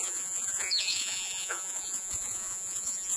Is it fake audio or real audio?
fake